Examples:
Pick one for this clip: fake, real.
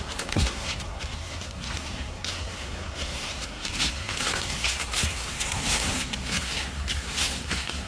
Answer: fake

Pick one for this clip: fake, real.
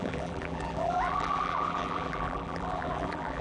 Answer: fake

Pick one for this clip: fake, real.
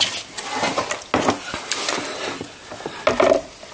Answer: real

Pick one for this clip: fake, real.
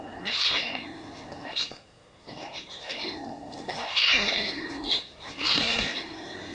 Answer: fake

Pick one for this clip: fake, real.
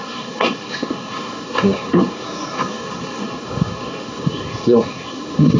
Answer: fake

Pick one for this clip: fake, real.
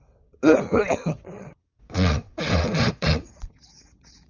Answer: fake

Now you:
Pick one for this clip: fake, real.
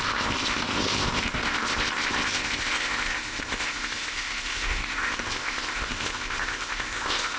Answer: fake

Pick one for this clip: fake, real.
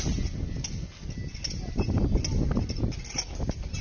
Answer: real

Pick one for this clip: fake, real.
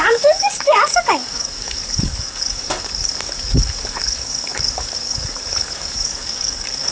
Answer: fake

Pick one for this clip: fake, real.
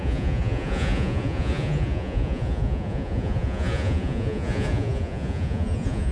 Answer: fake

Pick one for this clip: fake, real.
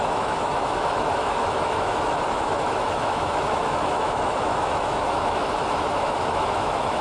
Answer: fake